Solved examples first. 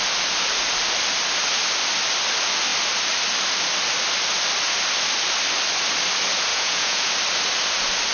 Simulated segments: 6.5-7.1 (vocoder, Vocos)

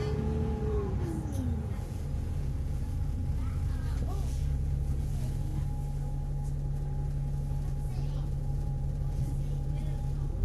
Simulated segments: 0.0-3.2 (vocoder, Vocos); 3.8-5.5; 7.9-10.4

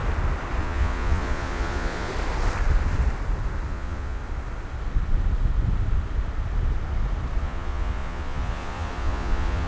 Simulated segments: 0.6-2.1 (vocoder, Vocos); 3.7-4.2; 7.4-9.7

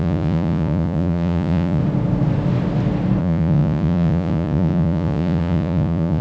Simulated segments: 0.0-1.8 (vocoder, Vocos); 3.2-6.2